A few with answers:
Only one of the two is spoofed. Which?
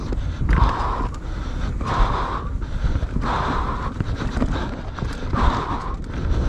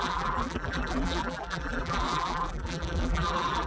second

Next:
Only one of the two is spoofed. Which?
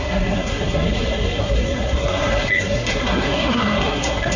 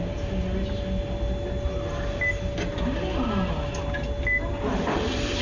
first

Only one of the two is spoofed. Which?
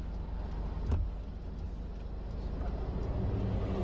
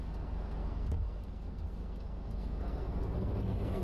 second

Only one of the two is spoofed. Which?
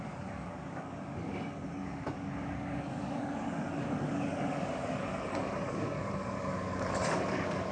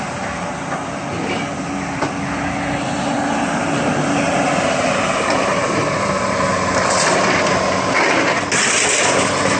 first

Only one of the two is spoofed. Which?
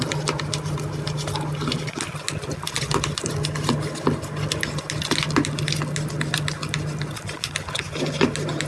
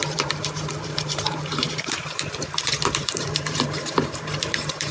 second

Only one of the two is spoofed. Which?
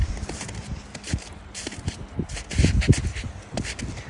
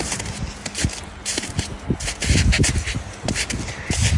first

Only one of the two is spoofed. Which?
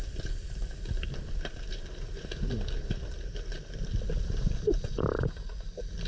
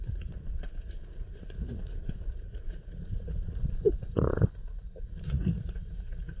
second